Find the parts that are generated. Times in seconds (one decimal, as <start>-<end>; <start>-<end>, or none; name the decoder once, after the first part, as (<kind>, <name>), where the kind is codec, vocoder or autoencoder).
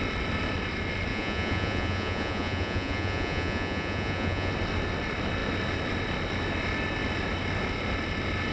1.1-4.5 (vocoder, Vocos)